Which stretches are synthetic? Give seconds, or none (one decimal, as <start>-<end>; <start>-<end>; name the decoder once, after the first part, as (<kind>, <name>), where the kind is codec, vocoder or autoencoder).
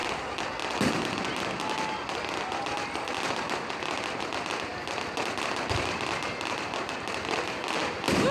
none